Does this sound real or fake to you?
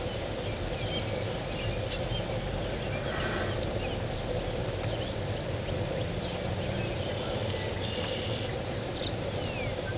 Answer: real